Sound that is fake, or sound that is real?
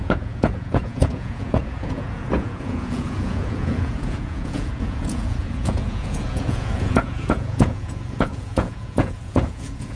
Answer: fake